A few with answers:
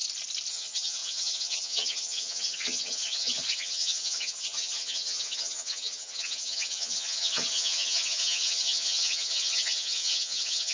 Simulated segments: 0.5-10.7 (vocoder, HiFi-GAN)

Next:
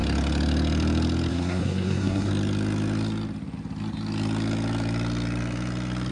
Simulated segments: 1.3-2.3 (codec, SNAC)

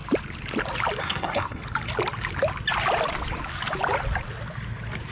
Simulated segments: 1.0-1.6 (codec, SNAC)

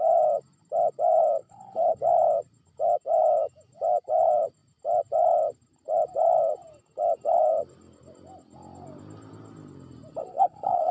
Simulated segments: 1.4-2.0 (codec, HILCodec); 10.3-10.9